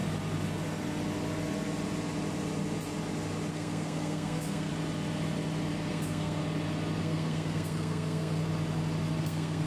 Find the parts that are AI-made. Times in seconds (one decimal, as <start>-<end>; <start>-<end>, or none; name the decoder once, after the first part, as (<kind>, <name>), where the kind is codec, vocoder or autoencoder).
3.5-4.7 (codec, SNAC); 5.9-6.4; 7.0-8.5; 9.2-9.7